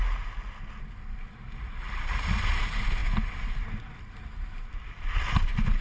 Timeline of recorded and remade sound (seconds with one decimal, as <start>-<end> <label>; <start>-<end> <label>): 0.0-5.8 recorded